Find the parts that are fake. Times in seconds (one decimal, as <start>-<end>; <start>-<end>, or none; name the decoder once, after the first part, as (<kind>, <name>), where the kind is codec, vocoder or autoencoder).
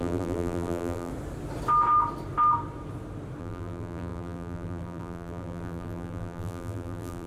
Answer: 0.0-1.1 (vocoder, BigVGAN v2); 3.4-7.3